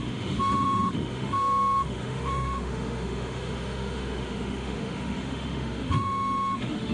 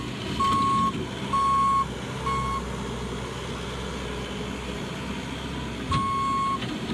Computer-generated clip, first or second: first